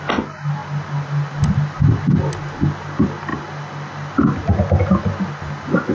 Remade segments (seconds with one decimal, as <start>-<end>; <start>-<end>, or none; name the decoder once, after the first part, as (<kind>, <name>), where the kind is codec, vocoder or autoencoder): none